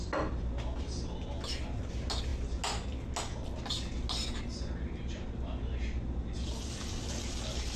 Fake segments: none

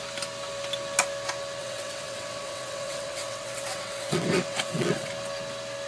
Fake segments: 1.6-5.1 (vocoder, WaveNeXt)

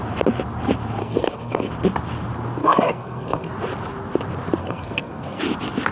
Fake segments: 1.0-1.7 (codec, SNAC); 2.6-3.5; 4.6-5.4